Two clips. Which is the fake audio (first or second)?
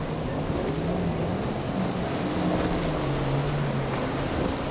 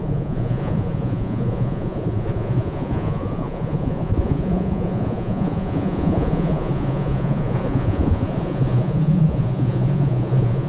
second